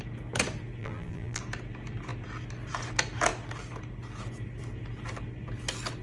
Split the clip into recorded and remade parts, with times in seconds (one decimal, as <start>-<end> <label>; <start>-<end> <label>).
0.0-0.8 recorded; 0.8-1.4 remade; 1.4-6.0 recorded